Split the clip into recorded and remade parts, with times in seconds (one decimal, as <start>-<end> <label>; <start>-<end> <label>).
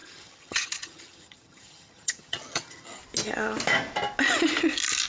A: 0.0-3.0 remade; 3.0-5.1 recorded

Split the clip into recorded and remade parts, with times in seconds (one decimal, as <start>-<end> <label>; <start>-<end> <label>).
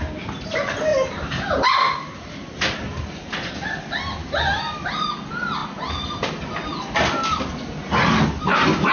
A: 0.0-8.9 recorded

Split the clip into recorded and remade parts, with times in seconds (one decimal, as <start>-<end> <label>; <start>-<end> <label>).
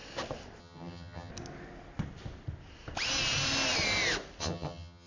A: 0.0-0.6 recorded; 0.6-1.3 remade; 1.3-4.4 recorded; 4.4-5.1 remade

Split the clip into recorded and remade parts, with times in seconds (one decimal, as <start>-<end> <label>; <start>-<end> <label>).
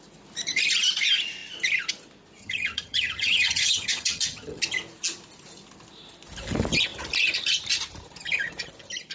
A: 0.0-2.4 recorded; 2.4-4.6 remade; 4.6-9.1 recorded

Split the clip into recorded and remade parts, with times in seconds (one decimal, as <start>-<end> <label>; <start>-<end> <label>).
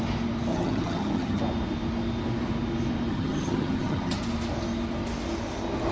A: 0.0-0.5 recorded; 0.5-1.4 remade; 1.4-3.1 recorded; 3.1-4.2 remade; 4.2-5.9 recorded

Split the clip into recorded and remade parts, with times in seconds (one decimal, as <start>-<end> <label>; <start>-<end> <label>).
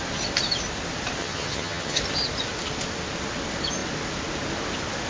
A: 0.0-1.2 recorded; 1.2-2.0 remade; 2.0-5.1 recorded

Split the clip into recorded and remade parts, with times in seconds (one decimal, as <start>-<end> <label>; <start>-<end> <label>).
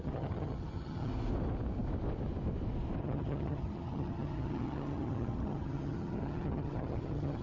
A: 0.0-1.1 remade; 1.1-3.0 recorded; 3.0-7.4 remade